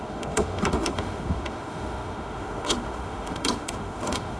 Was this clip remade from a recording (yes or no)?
yes